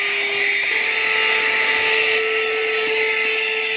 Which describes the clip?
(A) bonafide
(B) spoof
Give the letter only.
A